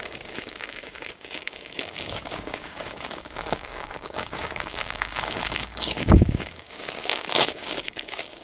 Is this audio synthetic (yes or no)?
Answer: yes